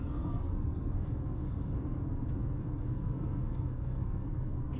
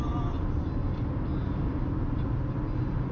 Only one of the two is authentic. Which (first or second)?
second